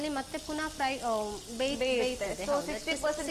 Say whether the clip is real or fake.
real